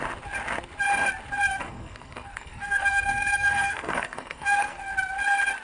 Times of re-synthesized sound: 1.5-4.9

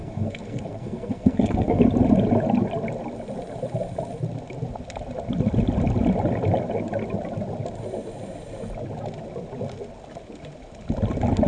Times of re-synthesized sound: 0.0-1.8

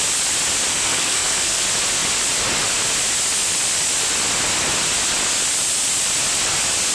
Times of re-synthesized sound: 0.7-1.6

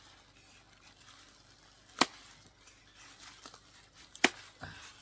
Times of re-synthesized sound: none

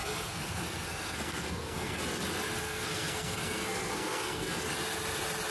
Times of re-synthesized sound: 0.0-2.0; 2.6-4.6

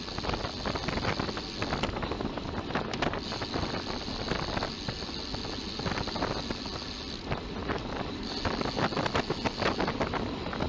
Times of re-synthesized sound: none